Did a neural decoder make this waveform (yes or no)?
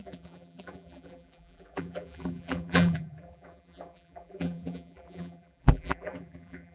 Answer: yes